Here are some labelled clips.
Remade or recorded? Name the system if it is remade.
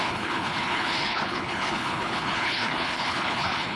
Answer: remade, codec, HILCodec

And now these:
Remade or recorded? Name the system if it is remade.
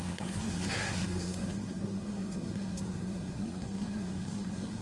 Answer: remade, codec, SNAC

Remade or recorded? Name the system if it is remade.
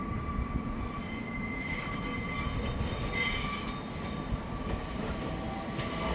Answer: recorded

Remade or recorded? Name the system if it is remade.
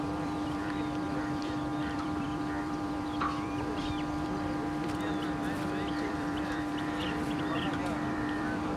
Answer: remade, vocoder, BigVGAN v2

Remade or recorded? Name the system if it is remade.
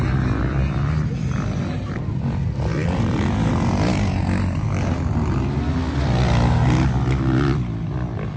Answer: recorded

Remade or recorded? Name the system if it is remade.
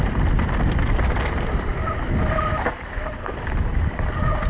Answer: remade, vocoder, BigVGAN v2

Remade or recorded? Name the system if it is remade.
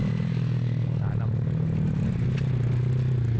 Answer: recorded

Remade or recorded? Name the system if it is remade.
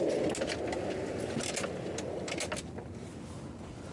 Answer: recorded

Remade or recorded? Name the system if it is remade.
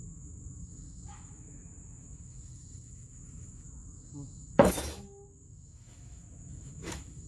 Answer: remade, autoencoder, DAC-VAE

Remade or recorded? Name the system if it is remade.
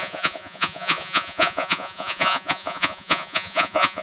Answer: remade, vocoder, Vocos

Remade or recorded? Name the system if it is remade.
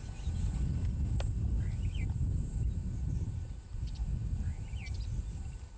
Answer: recorded